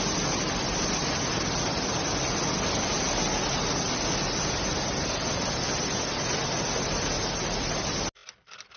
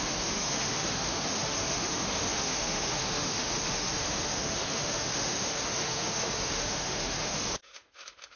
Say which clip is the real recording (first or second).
first